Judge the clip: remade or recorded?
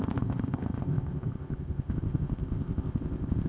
remade